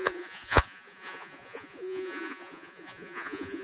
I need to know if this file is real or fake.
fake